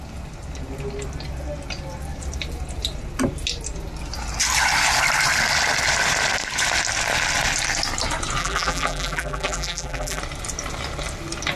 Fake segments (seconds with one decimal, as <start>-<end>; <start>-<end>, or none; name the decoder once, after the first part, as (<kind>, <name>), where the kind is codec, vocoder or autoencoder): 8.4-10.2 (vocoder, BigVGAN v2)